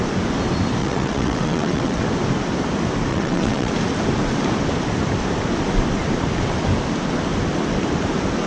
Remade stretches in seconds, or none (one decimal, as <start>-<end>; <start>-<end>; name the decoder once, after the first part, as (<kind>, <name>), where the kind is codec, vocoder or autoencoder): 0.8-2.0 (vocoder, WaveNeXt); 3.1-3.7